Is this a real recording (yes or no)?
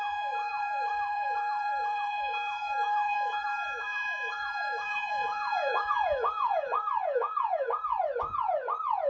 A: no